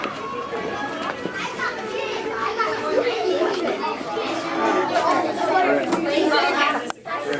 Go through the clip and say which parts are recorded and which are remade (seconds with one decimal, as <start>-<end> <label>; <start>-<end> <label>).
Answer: 0.0-2.4 recorded; 2.4-3.6 remade; 3.6-7.4 recorded